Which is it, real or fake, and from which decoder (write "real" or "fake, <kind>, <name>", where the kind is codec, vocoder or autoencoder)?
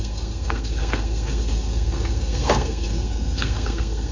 fake, codec, SNAC